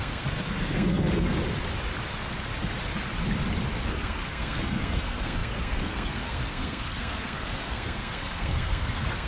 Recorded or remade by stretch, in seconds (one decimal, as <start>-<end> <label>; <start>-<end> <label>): 0.0-1.4 remade; 1.4-3.9 recorded; 3.9-9.3 remade